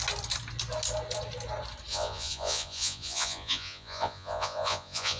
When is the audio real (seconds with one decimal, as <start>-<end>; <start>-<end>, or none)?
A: 0.0-1.9